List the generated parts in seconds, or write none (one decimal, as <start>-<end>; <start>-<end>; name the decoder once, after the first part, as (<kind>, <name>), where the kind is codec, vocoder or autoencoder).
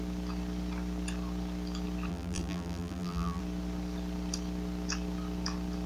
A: 2.1-3.4 (vocoder, BigVGAN v2)